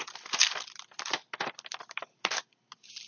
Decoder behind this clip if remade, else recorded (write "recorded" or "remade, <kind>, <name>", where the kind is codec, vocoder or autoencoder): recorded